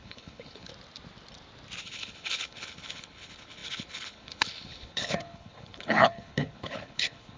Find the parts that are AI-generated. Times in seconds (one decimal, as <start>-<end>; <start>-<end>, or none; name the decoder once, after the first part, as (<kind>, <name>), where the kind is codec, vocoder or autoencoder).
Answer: 0.0-0.7 (codec, HILCodec); 1.8-7.4